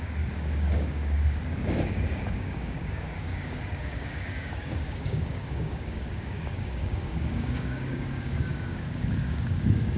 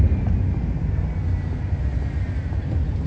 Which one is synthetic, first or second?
first